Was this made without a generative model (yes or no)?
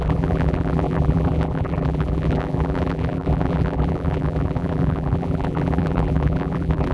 no